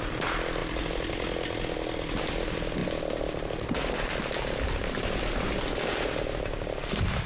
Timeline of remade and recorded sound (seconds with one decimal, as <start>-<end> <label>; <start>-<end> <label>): 0.0-7.3 recorded